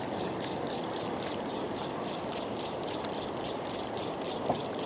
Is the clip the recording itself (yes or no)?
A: no